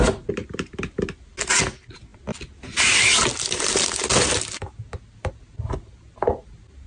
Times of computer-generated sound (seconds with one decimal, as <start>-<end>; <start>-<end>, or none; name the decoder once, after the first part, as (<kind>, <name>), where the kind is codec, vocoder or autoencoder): none